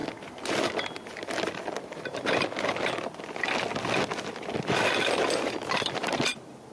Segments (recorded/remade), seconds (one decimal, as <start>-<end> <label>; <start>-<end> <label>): 0.0-0.7 remade; 0.7-6.7 recorded